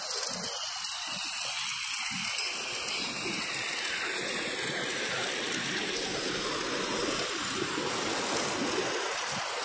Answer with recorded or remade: recorded